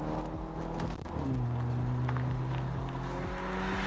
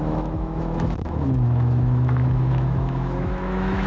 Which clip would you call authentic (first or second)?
first